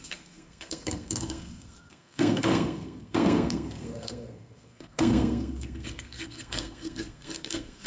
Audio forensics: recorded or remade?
remade